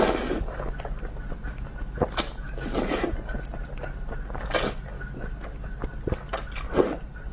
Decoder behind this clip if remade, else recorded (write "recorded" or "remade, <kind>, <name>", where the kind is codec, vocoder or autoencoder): recorded